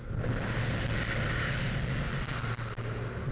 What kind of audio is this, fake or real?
real